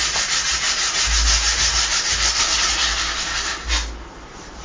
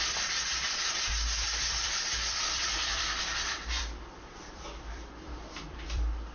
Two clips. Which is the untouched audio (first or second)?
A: first